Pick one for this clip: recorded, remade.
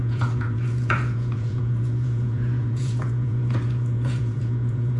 remade